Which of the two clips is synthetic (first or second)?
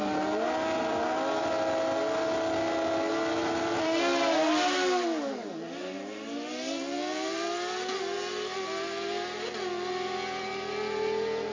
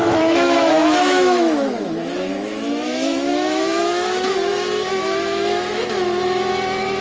second